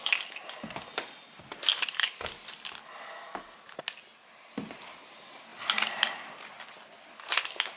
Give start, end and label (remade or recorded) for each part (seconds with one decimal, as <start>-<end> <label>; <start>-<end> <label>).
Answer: 0.0-7.8 recorded